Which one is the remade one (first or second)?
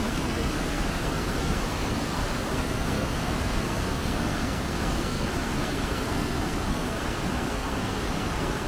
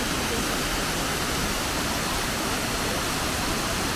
first